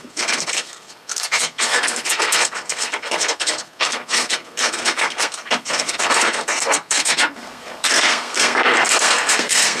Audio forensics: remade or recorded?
remade